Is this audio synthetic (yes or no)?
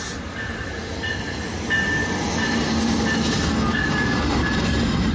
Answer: no